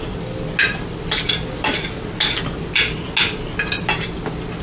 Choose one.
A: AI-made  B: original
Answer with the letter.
B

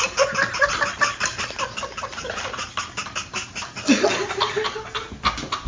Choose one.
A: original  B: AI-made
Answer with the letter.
A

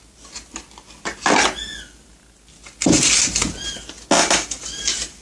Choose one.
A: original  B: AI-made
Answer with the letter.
A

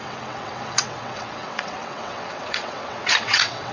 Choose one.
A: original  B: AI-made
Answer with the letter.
B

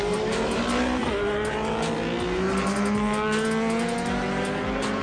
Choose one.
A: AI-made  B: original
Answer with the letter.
B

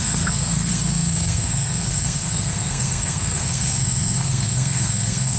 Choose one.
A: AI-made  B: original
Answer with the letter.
A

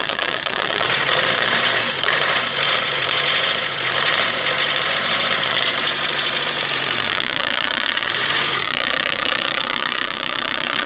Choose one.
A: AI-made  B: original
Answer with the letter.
A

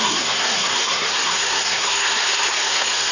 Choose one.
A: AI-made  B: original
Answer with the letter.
A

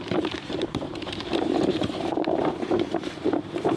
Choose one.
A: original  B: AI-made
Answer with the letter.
B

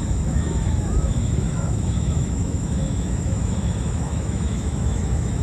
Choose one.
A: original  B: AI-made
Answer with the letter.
B